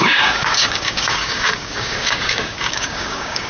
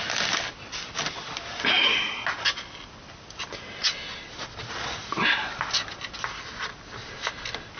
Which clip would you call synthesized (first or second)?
first